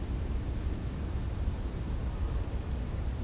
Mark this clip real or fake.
real